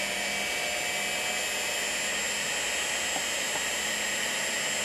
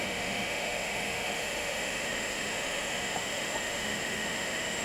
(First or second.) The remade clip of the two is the second